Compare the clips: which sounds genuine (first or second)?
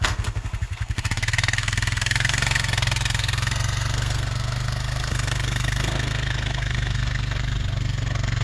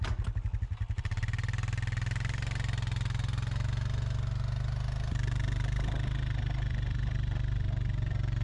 second